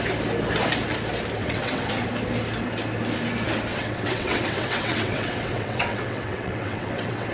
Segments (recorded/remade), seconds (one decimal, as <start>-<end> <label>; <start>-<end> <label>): 0.0-1.4 recorded; 1.4-1.9 remade; 1.9-3.7 recorded; 3.7-7.3 remade